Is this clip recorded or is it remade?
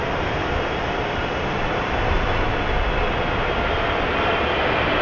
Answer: recorded